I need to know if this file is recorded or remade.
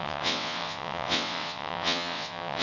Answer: remade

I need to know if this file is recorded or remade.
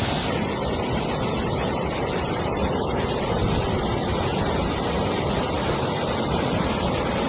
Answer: recorded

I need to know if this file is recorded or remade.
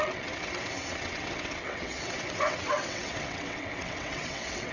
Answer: remade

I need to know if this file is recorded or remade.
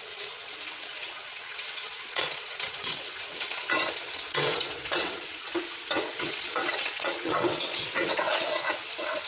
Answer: remade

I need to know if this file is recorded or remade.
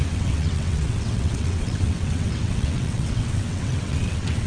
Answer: remade